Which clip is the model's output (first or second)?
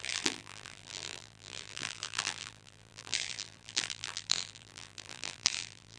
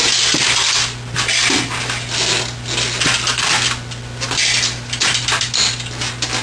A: first